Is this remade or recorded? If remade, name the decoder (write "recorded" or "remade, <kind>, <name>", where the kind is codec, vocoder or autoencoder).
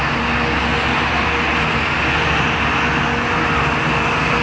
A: recorded